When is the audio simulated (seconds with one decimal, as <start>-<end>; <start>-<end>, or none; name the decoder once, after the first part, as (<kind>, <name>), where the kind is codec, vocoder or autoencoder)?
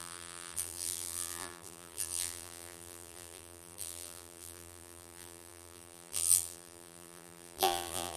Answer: 0.0-8.2 (vocoder, BigVGAN v2)